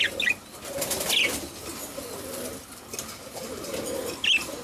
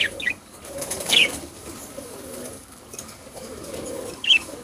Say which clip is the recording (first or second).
first